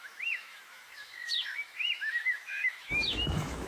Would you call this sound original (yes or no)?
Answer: no